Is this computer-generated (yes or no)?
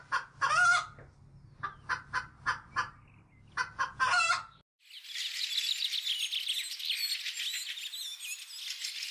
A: no